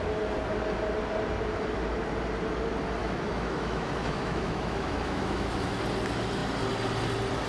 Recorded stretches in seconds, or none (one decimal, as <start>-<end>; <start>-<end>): 0.0-3.0; 5.8-7.5